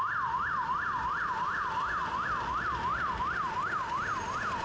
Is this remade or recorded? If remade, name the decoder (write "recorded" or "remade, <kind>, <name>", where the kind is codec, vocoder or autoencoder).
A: recorded